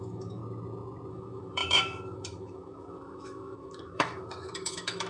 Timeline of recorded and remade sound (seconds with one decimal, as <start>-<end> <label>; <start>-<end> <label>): 0.0-0.4 remade; 0.4-1.1 recorded; 1.1-5.1 remade